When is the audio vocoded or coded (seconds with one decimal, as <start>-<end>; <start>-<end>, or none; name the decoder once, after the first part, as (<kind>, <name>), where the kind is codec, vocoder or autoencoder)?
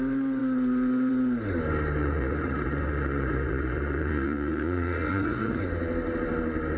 2.0-5.6 (vocoder, Vocos)